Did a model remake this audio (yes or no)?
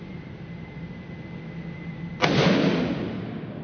no